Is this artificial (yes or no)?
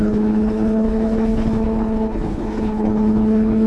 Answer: yes